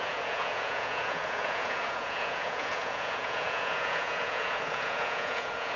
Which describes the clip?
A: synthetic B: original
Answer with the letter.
A